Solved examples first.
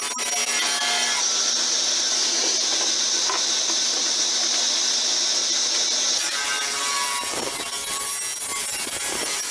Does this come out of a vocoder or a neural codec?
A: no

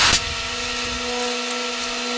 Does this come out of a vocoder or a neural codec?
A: no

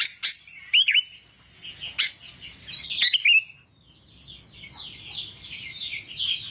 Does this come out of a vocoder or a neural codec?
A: no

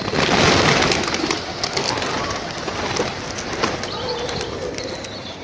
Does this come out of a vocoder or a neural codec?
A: no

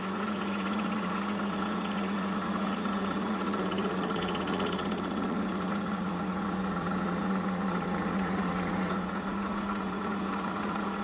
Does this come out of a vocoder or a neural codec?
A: yes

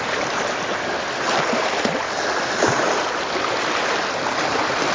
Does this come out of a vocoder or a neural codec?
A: no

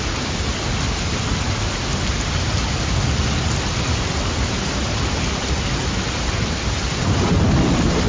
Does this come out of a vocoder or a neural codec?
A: no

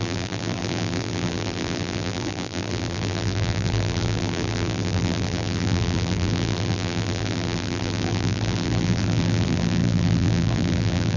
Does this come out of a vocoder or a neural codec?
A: yes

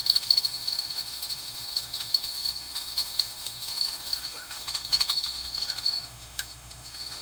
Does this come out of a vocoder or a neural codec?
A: yes